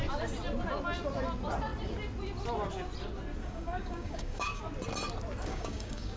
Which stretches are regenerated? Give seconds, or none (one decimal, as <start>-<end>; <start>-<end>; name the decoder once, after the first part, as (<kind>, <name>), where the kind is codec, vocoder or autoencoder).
3.4-4.6 (codec, DAC); 5.5-6.2

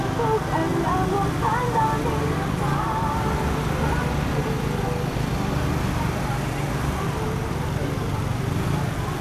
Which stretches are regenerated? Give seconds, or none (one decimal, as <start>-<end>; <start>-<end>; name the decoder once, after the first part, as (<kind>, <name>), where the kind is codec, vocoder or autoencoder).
none

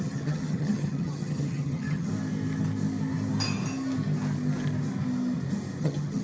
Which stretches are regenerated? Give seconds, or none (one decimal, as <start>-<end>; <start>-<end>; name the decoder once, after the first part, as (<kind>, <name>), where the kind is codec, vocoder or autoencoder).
0.0-2.1 (vocoder, HiFi-GAN); 5.8-6.2